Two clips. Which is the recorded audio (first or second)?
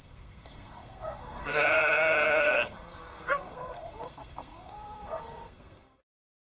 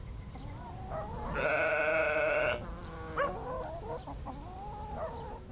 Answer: second